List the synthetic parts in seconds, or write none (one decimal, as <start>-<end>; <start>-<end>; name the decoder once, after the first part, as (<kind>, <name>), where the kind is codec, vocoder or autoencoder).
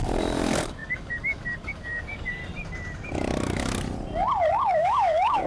0.0-2.4 (codec, DAC); 4.5-5.5